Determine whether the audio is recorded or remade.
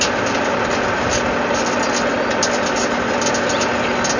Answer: recorded